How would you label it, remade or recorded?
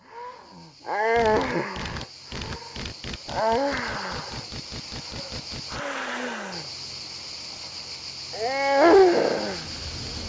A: recorded